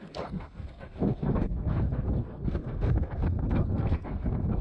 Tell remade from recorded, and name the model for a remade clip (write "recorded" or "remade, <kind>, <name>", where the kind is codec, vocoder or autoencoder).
remade, codec, SNAC